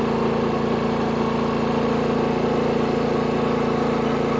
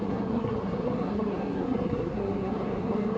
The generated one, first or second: second